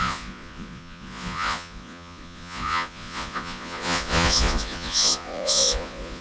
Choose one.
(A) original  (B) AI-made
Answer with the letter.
B